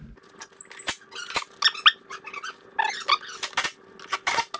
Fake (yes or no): no